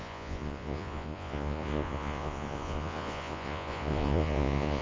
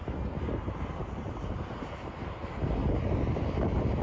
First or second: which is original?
second